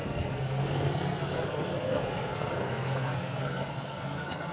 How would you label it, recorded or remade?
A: remade